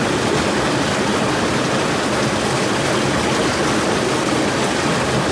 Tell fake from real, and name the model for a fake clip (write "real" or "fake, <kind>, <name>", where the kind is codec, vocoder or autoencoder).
real